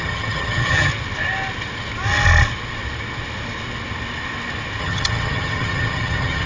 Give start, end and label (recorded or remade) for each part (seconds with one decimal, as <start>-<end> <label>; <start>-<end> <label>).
0.0-0.9 remade; 0.9-4.8 recorded; 4.8-6.5 remade